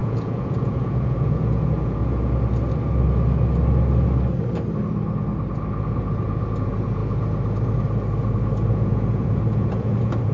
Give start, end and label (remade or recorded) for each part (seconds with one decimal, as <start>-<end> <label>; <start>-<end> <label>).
0.0-2.0 remade; 2.0-6.6 recorded; 6.6-7.0 remade; 7.0-8.7 recorded; 8.7-10.3 remade